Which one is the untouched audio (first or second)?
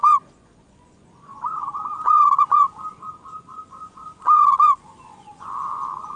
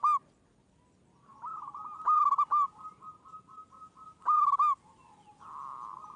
second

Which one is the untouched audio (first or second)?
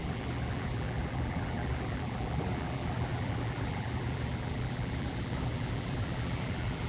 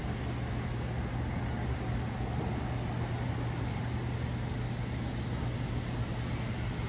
second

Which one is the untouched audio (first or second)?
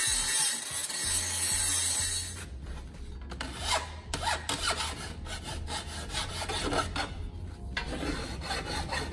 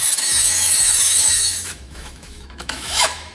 first